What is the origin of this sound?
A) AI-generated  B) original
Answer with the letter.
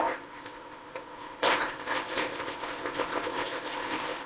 A